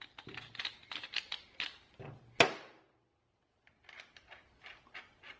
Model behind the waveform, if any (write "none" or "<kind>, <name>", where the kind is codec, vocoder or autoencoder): none